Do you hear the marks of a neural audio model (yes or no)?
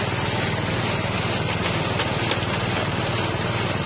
no